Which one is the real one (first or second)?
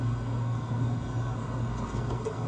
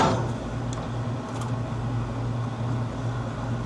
second